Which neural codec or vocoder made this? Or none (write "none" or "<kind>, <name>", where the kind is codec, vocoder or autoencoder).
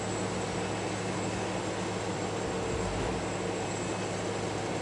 none